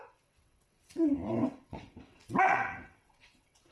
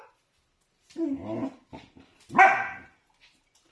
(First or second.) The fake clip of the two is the first